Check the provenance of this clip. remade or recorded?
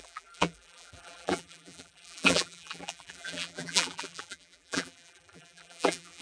remade